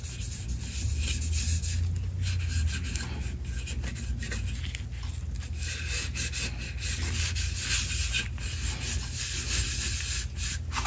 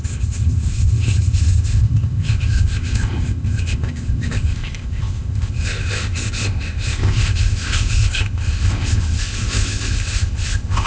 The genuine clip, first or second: first